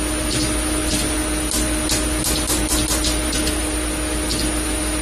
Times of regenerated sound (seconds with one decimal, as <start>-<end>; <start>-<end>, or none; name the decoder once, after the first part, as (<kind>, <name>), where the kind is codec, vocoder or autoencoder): none